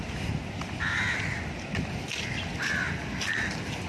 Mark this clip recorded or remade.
recorded